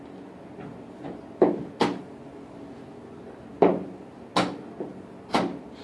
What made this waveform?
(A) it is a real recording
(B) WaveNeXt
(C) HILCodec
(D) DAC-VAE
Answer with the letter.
A